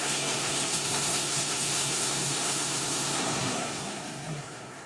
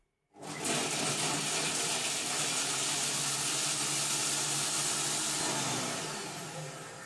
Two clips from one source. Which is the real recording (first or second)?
second